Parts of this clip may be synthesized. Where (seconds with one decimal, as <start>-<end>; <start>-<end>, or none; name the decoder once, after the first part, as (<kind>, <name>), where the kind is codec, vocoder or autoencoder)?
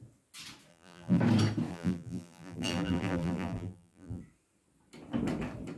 0.7-1.2 (vocoder, BigVGAN v2); 1.7-4.2